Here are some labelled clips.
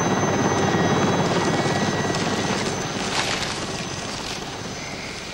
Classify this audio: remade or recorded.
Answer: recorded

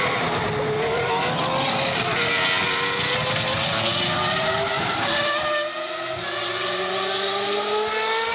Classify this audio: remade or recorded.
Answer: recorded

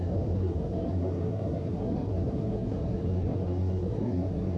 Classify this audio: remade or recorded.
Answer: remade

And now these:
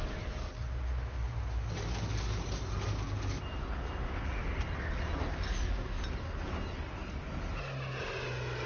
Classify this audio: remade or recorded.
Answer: recorded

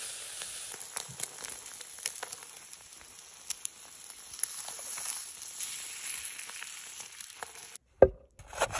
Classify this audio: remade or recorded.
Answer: recorded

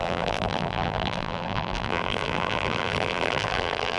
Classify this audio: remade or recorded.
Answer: remade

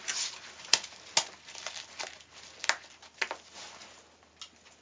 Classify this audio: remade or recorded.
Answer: recorded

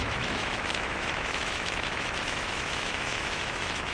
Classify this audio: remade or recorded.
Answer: remade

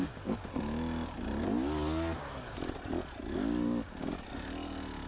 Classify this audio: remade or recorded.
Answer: recorded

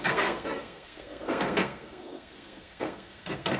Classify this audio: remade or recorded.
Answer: remade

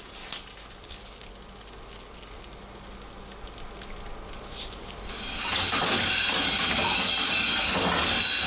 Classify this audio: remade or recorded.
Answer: recorded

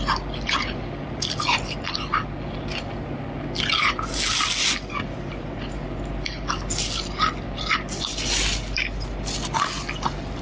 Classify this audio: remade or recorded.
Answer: recorded